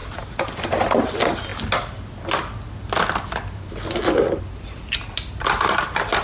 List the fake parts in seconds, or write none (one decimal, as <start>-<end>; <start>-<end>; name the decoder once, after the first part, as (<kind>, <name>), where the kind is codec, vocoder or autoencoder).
none